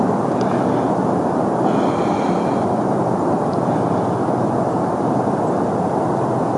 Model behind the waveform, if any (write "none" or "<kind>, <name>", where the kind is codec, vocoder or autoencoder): none